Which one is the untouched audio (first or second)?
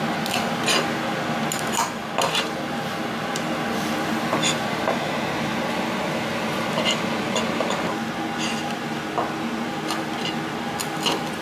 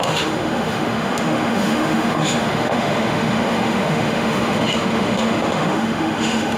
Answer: first